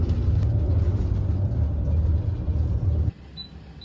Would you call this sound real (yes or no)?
yes